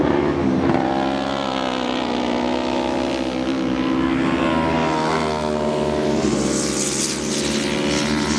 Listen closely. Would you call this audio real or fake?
real